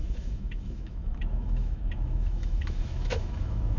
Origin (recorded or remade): remade